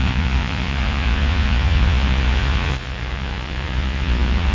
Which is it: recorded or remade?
remade